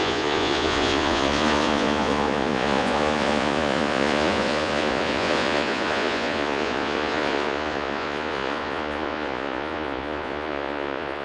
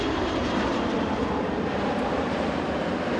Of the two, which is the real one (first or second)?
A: second